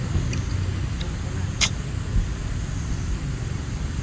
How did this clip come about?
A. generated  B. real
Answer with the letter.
B